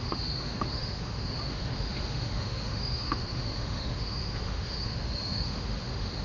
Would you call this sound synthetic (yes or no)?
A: yes